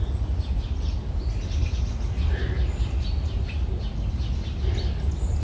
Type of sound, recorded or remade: recorded